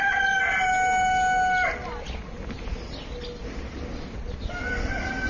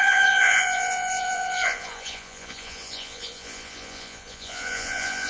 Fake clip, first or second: second